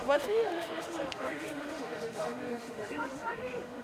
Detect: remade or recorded remade